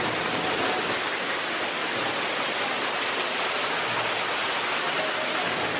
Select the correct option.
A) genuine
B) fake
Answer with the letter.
A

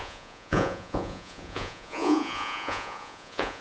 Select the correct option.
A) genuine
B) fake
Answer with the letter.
B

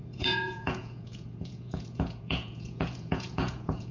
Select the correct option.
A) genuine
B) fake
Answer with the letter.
B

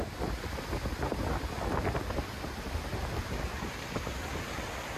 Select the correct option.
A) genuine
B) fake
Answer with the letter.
A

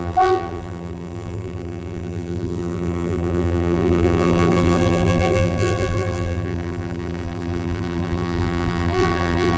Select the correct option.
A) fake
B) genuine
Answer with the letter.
A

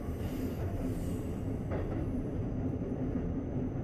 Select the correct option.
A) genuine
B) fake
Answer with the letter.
A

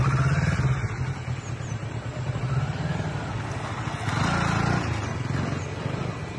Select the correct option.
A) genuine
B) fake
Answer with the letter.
A